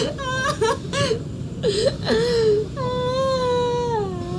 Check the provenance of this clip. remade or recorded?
recorded